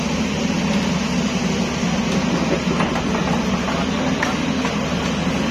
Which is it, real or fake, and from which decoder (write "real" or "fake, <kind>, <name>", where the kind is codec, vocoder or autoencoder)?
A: real